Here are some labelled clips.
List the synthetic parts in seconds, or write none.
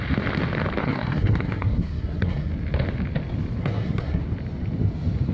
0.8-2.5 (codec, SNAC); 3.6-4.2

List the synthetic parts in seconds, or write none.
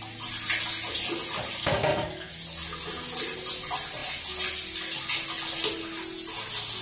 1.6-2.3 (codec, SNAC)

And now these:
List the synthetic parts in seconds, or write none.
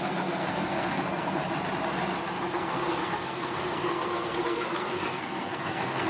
0.0-1.4 (codec, SNAC); 2.5-6.1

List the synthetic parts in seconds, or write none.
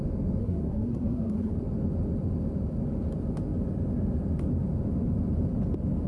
0.4-1.5 (codec, SNAC)